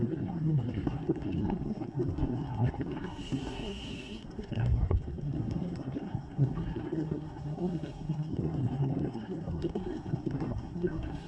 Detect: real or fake fake